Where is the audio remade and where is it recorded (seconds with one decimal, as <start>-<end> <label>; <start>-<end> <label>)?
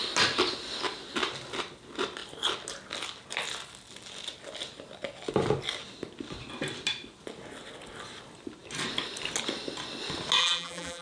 0.0-10.4 recorded; 10.4-11.0 remade